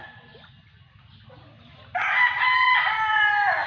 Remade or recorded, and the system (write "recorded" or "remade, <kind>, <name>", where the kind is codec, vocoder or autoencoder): recorded